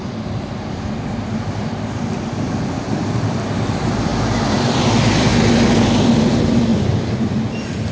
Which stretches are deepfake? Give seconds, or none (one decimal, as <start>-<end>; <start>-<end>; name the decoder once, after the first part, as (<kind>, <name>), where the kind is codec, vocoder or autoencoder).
0.0-4.1 (vocoder, BigVGAN v2); 4.8-5.3; 6.1-7.9